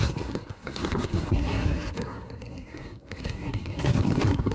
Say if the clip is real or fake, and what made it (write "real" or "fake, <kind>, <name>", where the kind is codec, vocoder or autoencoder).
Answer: fake, codec, SNAC